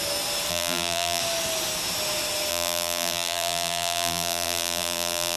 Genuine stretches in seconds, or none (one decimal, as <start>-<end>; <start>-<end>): 0.0-0.5; 1.2-2.5